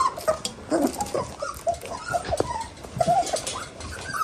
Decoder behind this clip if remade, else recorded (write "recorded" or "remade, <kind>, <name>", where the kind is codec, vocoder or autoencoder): recorded